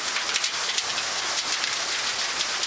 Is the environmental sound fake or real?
real